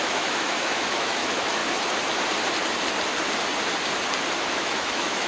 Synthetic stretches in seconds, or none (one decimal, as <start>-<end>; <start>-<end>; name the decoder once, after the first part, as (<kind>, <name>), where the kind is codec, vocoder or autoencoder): 0.0-1.6 (autoencoder, DAC-VAE); 4.5-5.3